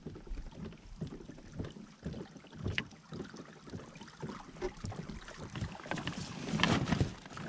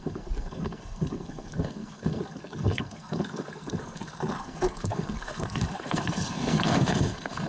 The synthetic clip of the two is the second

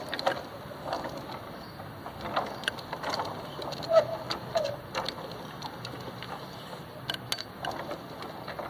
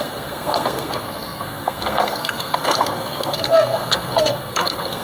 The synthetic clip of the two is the second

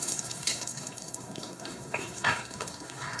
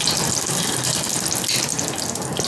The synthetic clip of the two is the first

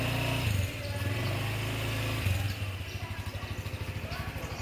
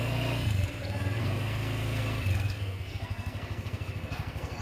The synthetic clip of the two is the second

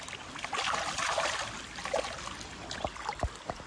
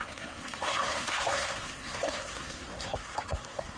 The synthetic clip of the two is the second